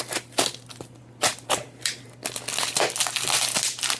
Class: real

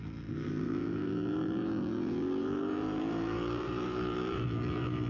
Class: fake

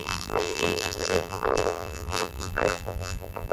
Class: fake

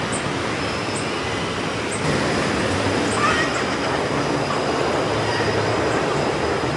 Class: real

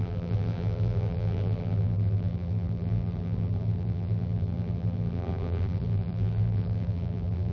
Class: fake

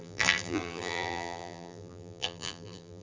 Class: fake